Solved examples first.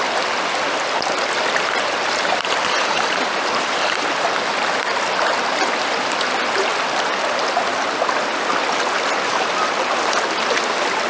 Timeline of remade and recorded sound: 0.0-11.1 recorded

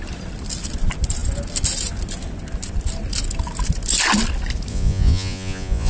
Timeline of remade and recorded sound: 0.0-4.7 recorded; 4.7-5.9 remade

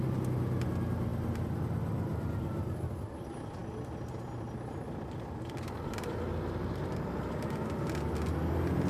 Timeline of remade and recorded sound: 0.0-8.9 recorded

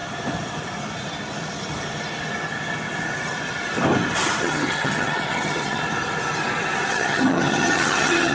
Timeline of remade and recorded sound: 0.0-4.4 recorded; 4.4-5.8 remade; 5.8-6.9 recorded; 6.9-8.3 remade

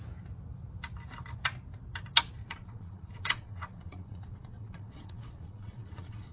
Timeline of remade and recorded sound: 0.0-2.4 recorded; 2.4-6.3 remade

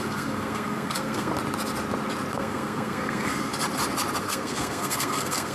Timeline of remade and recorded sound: 0.0-1.3 remade; 1.3-2.3 recorded; 2.3-3.5 remade; 3.5-4.2 recorded; 4.2-5.5 remade

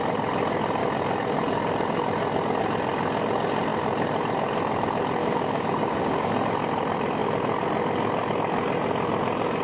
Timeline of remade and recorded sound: 0.0-5.2 recorded; 5.2-6.3 remade; 6.3-9.6 recorded

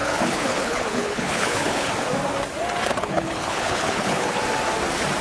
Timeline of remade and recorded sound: 0.0-1.9 remade; 1.9-2.9 recorded; 2.9-4.4 remade; 4.4-5.2 recorded